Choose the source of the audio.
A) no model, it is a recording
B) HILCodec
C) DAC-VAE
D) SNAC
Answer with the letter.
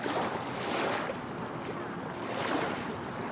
A